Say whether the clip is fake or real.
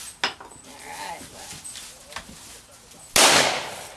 real